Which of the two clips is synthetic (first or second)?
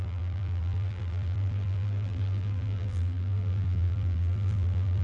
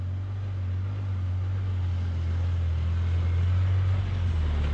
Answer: first